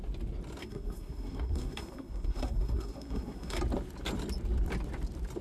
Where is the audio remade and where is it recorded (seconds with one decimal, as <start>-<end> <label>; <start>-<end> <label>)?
0.0-0.6 recorded; 0.6-3.6 remade; 3.6-5.4 recorded